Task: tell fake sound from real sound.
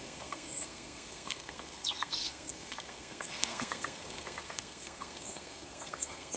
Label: fake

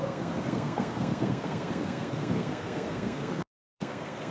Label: fake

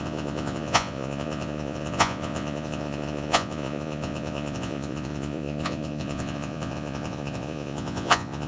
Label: fake